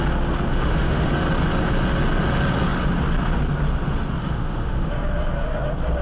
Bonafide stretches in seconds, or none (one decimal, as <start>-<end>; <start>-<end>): 0.0-0.5; 1.1-4.2; 4.9-6.0